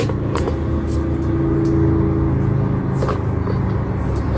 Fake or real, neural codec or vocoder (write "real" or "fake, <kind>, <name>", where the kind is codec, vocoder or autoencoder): real